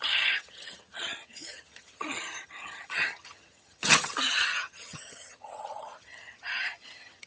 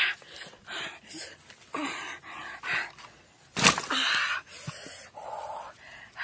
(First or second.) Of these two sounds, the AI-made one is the first